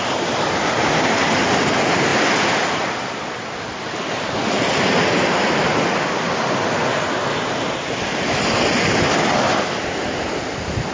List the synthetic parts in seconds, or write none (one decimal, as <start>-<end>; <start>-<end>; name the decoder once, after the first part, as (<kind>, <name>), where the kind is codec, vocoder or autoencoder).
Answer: none

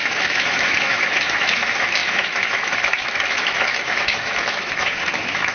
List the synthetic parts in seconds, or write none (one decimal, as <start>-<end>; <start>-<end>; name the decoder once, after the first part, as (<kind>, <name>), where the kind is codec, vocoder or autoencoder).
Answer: 0.0-5.5 (autoencoder, DAC-VAE)

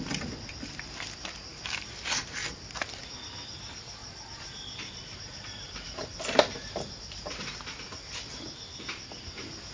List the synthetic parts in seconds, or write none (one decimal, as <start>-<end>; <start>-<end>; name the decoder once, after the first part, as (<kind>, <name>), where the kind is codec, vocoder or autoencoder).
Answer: 4.0-7.0 (vocoder, BigVGAN v2)

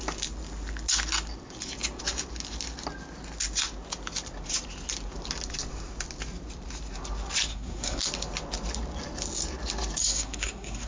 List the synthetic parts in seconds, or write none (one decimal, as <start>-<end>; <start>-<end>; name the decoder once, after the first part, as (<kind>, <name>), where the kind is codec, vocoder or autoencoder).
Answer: 7.5-8.0 (codec, SNAC); 10.0-10.9

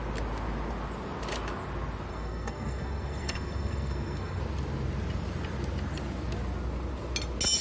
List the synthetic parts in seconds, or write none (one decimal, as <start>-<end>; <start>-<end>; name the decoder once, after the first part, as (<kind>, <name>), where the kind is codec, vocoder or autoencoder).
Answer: 2.1-4.4 (codec, SNAC)

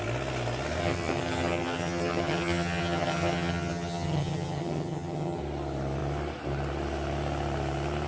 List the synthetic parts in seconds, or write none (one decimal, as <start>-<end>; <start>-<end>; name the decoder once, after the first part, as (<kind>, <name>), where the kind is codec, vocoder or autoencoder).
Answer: 0.8-5.4 (vocoder, HiFi-GAN)

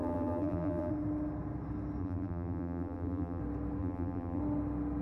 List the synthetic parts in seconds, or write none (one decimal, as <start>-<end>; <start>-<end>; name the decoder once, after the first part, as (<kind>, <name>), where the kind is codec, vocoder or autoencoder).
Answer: 0.0-0.9 (vocoder, BigVGAN v2); 2.0-3.4; 3.8-4.4

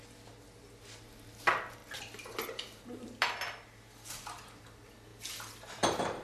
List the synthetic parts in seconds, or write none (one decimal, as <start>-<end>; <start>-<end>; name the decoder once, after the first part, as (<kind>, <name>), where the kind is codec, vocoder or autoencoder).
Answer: none